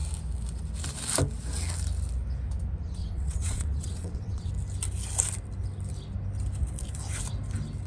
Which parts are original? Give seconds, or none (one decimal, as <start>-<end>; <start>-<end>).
0.0-3.0; 4.5-7.9